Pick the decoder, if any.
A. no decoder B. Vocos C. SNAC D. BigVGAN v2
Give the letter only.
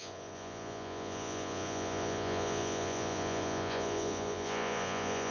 B